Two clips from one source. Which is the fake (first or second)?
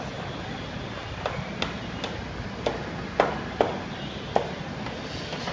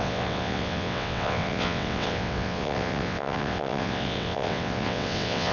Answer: second